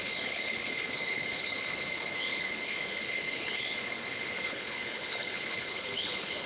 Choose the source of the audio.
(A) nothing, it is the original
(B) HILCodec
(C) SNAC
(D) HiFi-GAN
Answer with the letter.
B